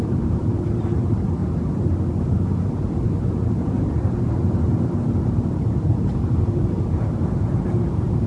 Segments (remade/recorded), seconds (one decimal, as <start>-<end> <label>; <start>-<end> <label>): 0.0-1.4 remade; 1.4-3.5 recorded; 3.5-8.3 remade